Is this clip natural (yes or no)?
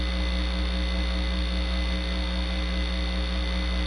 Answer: yes